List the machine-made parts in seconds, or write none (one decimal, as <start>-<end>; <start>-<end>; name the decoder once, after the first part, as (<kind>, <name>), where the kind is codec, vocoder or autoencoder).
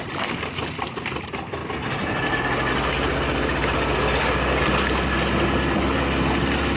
none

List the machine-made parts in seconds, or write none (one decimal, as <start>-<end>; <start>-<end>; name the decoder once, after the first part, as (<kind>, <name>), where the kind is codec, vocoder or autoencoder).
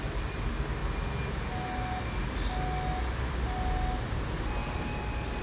4.6-5.4 (codec, DAC)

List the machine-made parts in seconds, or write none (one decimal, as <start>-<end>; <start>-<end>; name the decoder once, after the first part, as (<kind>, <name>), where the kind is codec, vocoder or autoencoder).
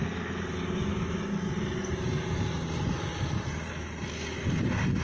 none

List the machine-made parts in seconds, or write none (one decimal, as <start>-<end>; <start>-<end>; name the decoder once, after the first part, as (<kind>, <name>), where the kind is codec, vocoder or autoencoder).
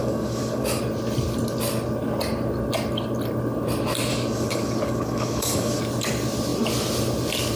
0.0-0.8 (codec, DAC); 4.1-5.8